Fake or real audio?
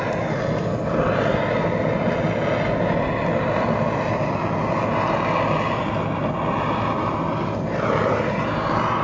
real